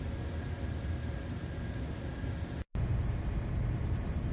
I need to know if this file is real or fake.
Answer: real